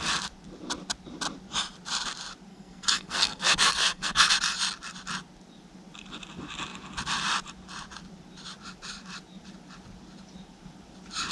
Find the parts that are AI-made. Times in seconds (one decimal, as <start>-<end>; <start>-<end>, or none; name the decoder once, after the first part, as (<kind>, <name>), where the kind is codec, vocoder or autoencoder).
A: 2.5-4.3 (codec, SNAC)